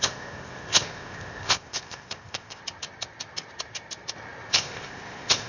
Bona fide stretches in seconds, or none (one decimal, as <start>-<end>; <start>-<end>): 2.6-4.5